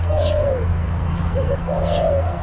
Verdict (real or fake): fake